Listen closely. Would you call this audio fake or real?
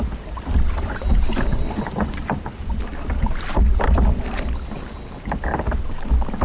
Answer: real